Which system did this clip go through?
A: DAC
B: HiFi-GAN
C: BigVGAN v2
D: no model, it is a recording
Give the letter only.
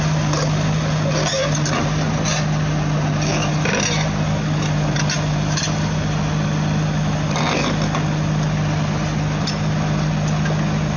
D